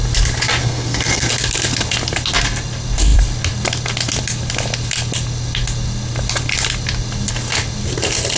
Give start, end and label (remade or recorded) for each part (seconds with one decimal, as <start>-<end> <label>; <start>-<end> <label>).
0.0-0.6 recorded; 0.6-1.3 remade; 1.3-8.4 recorded